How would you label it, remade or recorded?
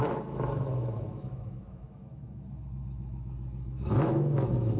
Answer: remade